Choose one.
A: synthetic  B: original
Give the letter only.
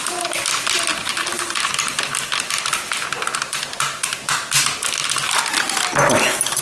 B